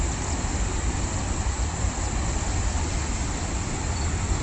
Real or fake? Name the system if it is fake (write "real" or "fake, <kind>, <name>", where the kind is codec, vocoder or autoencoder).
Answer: fake, vocoder, BigVGAN v2